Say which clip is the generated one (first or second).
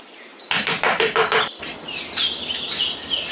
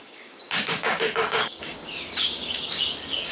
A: second